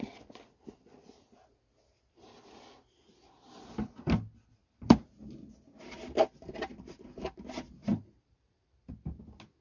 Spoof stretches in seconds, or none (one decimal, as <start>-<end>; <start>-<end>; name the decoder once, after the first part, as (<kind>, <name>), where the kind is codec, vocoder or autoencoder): 4.6-5.1 (vocoder, BigVGAN v2); 7.8-8.9